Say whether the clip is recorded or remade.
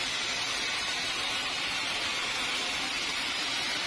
recorded